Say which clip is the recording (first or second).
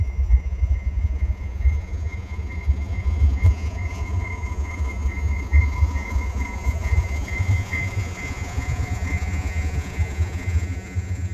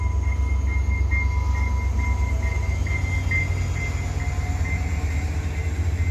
second